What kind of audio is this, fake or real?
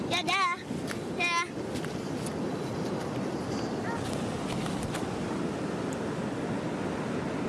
real